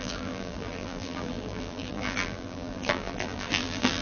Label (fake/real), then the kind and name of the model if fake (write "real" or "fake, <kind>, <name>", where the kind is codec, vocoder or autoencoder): fake, vocoder, BigVGAN v2